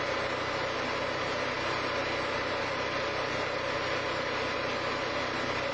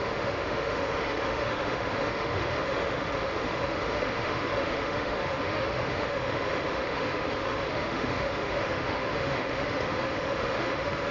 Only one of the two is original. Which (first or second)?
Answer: first